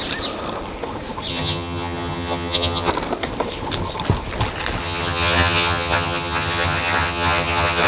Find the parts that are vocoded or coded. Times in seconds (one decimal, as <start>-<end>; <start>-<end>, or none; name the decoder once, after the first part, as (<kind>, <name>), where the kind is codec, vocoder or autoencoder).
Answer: 1.3-2.9 (vocoder, HiFi-GAN); 4.8-7.9